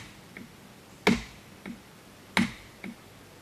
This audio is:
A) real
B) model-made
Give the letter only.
A